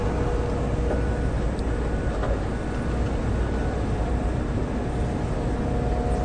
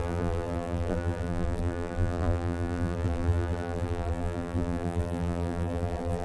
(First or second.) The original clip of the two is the first